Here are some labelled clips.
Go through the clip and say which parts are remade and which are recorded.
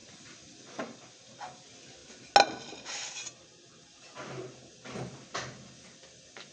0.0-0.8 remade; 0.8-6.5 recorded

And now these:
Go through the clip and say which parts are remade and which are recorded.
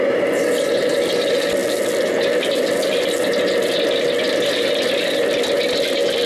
0.0-6.3 recorded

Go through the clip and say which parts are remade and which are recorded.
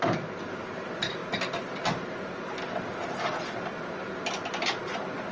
0.0-5.3 recorded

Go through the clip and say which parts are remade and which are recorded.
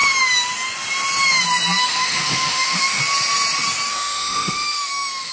0.0-1.8 recorded; 1.8-3.0 remade; 3.0-3.9 recorded; 3.9-5.3 remade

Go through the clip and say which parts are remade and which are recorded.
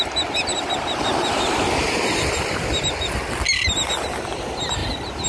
0.0-4.8 recorded; 4.8-5.3 remade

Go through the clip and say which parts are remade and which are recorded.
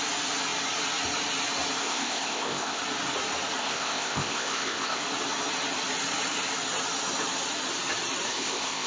0.0-1.8 recorded; 1.8-2.8 remade; 2.8-3.6 recorded; 3.6-5.0 remade; 5.0-8.3 recorded; 8.3-8.9 remade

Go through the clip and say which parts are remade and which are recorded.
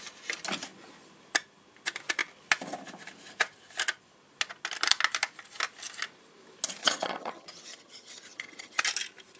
0.0-6.8 recorded; 6.8-8.8 remade; 8.8-9.4 recorded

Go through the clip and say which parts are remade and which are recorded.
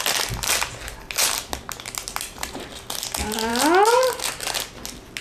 0.0-5.2 recorded